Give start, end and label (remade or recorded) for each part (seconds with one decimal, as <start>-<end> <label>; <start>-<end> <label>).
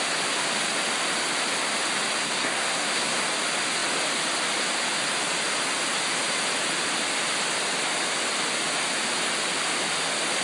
0.0-2.2 recorded; 2.2-3.2 remade; 3.2-10.4 recorded